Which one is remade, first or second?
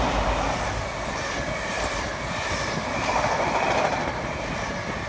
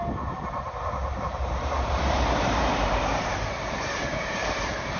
second